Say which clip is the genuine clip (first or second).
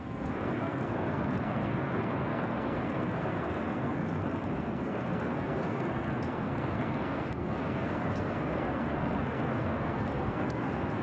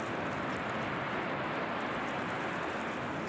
second